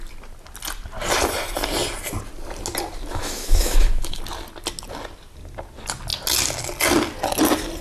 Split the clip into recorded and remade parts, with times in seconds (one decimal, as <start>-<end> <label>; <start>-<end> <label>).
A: 0.0-3.1 recorded; 3.1-4.2 remade; 4.2-7.8 recorded